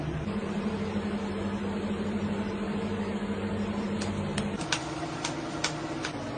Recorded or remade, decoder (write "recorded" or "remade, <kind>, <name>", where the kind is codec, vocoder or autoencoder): recorded